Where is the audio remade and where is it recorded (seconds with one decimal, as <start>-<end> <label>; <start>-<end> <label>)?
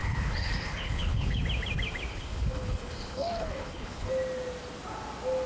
0.0-1.4 remade; 1.4-2.1 recorded; 2.1-4.1 remade; 4.1-5.5 recorded